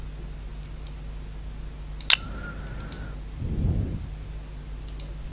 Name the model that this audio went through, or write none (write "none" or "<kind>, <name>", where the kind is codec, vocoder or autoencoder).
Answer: none